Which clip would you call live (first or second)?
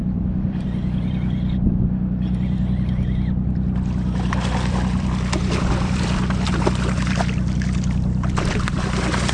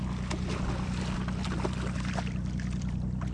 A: second